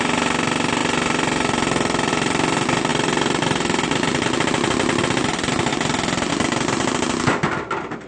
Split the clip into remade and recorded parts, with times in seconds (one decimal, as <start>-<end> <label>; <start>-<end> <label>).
0.0-0.8 recorded; 0.8-2.1 remade; 2.1-8.1 recorded